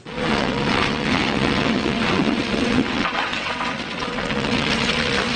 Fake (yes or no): yes